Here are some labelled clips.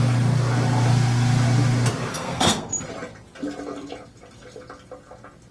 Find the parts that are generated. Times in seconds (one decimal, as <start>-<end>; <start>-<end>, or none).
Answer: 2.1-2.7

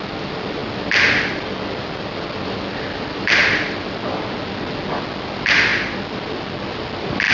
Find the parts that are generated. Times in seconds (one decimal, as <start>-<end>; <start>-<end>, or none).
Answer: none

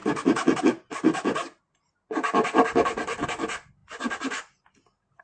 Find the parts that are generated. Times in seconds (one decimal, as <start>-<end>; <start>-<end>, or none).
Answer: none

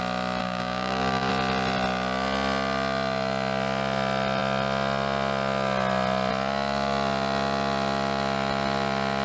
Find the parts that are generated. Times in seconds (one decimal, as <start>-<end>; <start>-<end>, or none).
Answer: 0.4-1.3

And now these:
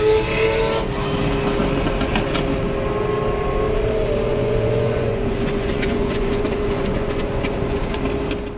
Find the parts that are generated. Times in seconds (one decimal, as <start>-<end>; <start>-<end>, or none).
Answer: 4.3-8.0

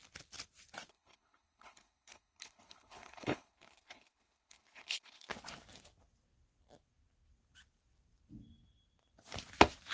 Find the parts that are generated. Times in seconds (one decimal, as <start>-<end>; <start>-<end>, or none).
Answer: 0.9-5.3

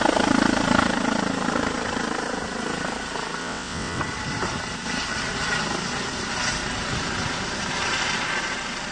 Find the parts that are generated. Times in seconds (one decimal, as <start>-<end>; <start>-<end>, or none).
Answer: 3.4-4.0

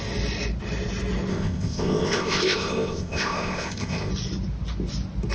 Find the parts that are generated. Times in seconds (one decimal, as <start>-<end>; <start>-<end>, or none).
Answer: 1.3-4.1